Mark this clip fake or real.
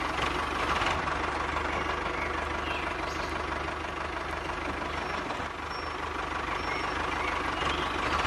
real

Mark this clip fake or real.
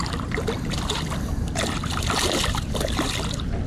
real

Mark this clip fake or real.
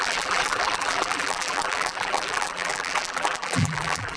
fake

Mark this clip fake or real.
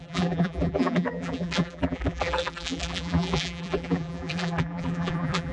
fake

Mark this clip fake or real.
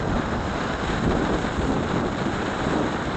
real